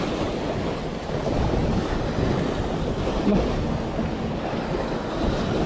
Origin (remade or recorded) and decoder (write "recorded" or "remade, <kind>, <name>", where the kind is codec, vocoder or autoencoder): recorded